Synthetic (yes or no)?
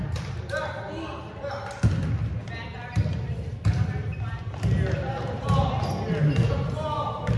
no